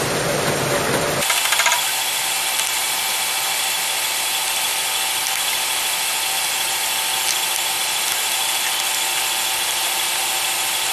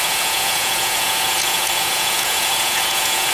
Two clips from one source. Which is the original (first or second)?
first